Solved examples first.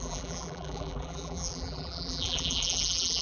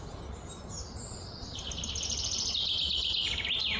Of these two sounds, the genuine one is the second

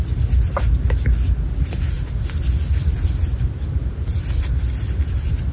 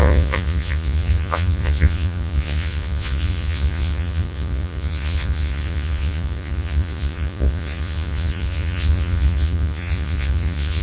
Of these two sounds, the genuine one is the first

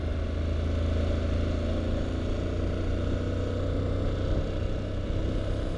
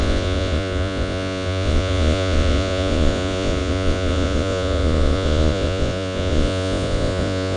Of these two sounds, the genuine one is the first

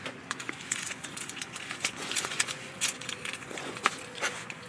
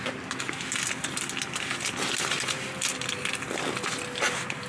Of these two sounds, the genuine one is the second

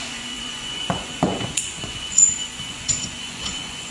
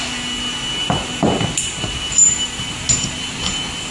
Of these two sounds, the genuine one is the second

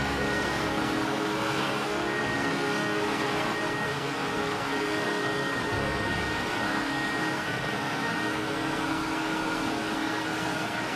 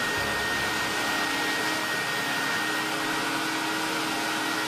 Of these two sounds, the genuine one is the second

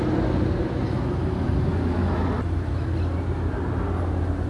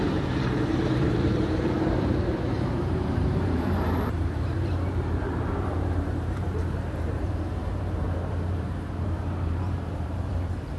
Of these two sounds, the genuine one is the first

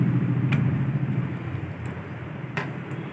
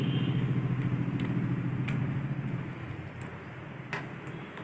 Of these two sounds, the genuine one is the second